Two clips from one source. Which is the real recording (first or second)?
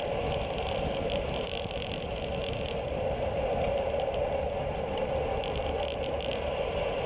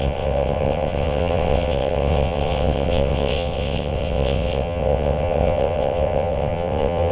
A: first